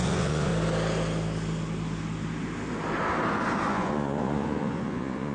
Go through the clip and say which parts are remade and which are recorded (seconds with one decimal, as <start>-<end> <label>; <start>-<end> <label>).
0.0-0.5 remade; 0.5-3.7 recorded; 3.7-5.3 remade